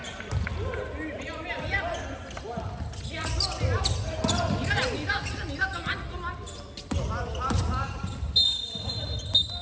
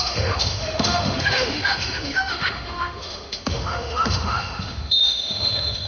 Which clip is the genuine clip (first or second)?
first